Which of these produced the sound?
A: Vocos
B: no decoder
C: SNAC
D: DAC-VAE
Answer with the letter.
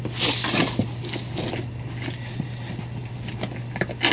B